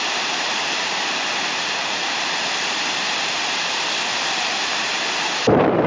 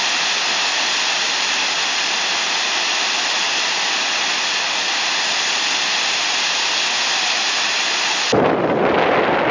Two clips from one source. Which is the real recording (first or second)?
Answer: second